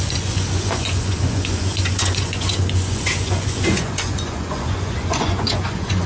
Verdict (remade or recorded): remade